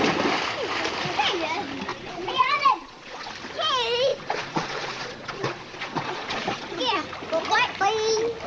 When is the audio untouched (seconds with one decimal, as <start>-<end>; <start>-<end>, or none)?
0.0-1.9; 3.3-4.1; 6.8-8.5